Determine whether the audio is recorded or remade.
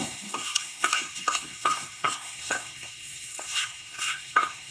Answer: remade